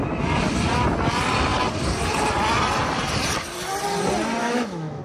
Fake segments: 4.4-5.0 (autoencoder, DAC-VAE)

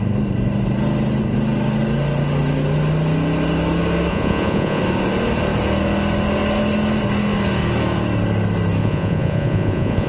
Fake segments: 4.1-4.8 (vocoder, Vocos); 8.8-10.1

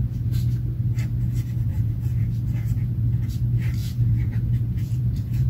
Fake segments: 1.7-3.2 (vocoder, Vocos); 3.8-5.5

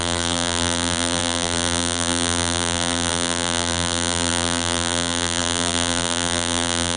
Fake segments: 0.0-7.0 (vocoder, BigVGAN v2)

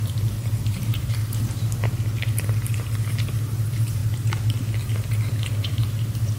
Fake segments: 0.0-1.2 (vocoder, BigVGAN v2); 3.5-4.0; 5.5-6.4

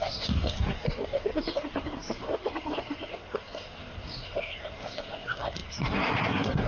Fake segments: 0.0-6.7 (codec, SNAC)

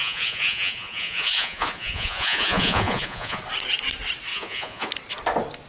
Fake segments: 0.0-3.4 (vocoder, Vocos); 4.3-4.9